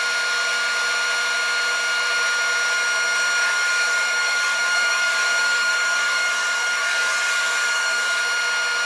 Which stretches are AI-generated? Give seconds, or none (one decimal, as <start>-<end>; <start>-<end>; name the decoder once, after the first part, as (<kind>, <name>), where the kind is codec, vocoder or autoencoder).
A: 3.4-8.2 (codec, DAC)